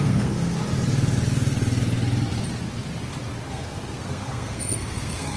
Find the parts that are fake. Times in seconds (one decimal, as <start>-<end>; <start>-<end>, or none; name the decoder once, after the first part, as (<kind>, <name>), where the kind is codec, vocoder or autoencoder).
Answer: 0.0-0.6 (codec, SNAC); 3.5-5.4